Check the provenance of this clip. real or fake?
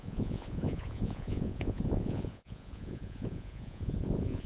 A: fake